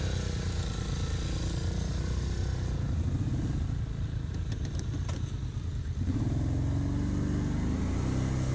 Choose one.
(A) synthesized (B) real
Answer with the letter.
B